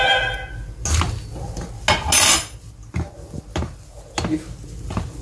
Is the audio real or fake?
real